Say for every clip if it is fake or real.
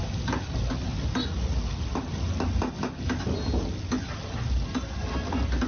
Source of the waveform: real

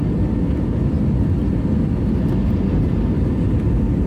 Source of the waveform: real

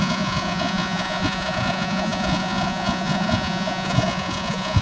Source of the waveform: fake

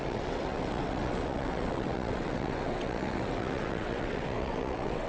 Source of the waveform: fake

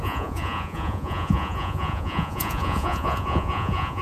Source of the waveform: fake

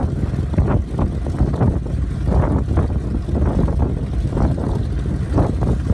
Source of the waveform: real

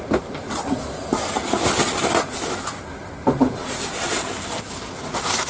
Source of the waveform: real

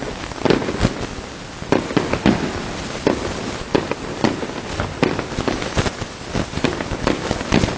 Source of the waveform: real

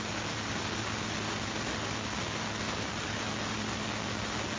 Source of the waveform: real